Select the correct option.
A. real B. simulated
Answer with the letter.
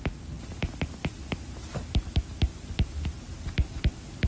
A